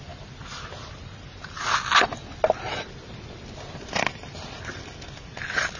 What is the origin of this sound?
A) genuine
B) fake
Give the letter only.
A